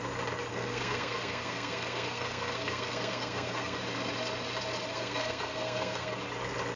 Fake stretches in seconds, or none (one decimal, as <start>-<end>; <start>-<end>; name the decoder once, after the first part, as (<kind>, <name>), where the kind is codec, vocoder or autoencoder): 0.5-3.8 (codec, SNAC); 4.9-6.2